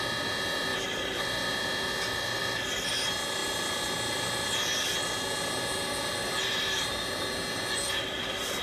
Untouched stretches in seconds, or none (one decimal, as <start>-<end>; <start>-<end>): 0.0-0.7; 2.4-8.6